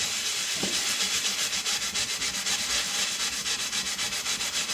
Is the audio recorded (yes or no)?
yes